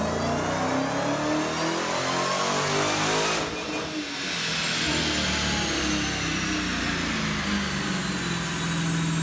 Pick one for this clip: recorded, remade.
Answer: recorded